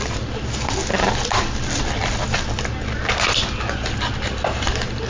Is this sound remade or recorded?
recorded